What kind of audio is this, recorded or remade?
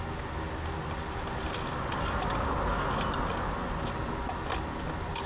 recorded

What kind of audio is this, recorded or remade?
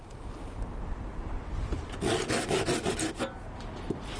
recorded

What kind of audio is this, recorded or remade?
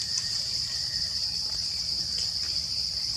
recorded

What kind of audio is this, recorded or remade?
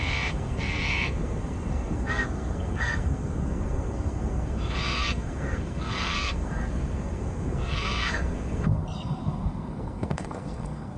remade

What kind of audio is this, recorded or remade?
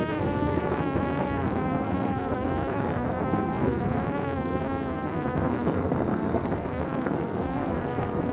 remade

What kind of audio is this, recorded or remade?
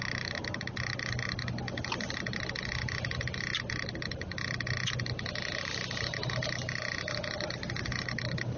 recorded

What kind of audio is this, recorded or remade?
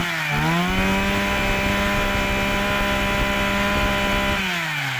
recorded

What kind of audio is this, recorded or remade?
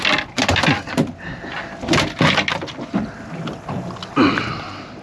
recorded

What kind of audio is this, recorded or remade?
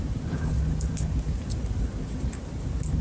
recorded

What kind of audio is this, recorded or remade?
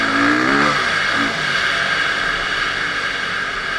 recorded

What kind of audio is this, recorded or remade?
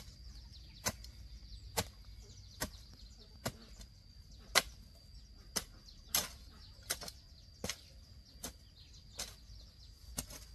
recorded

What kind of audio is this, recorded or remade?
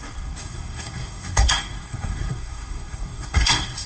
remade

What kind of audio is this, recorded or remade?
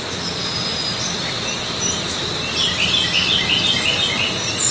recorded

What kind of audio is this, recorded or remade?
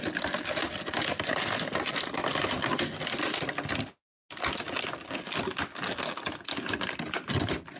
recorded